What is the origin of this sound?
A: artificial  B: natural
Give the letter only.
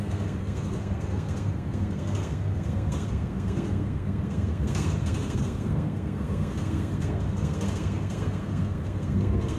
A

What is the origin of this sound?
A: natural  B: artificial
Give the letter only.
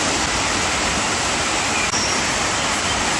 A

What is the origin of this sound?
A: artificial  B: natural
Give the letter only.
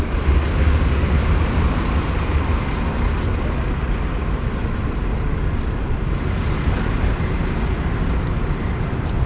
B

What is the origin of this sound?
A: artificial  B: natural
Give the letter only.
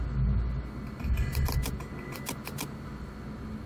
B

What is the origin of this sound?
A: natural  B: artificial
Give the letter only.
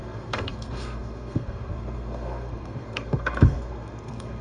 B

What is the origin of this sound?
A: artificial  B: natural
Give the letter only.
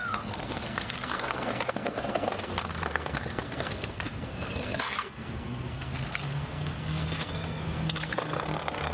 A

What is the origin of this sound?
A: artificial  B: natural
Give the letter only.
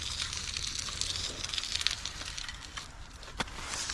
B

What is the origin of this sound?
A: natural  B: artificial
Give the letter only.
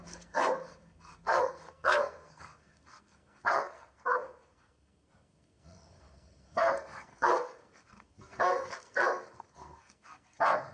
B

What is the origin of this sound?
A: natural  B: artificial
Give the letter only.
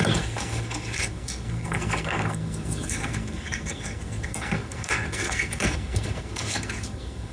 B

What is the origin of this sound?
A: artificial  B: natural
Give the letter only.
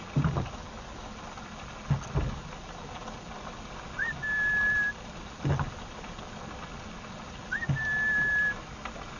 B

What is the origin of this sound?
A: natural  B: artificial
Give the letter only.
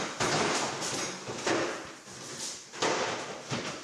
A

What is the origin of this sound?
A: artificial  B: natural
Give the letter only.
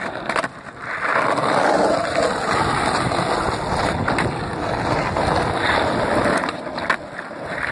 B